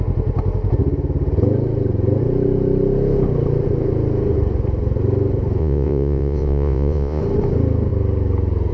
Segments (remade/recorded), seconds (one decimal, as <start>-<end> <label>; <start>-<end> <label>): 0.0-5.6 recorded; 5.6-7.2 remade; 7.2-8.7 recorded